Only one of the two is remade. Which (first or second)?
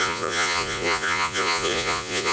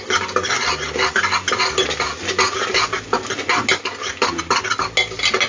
first